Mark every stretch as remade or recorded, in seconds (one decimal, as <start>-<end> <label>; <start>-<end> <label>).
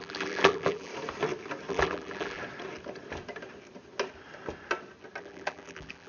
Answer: 0.0-0.9 remade; 0.9-1.7 recorded; 1.7-2.4 remade; 2.4-5.2 recorded; 5.2-6.1 remade